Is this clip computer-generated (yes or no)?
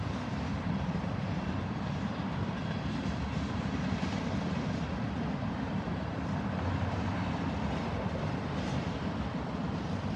yes